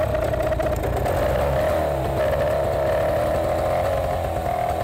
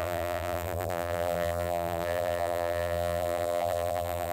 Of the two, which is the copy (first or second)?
second